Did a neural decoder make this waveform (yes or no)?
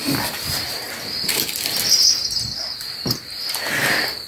no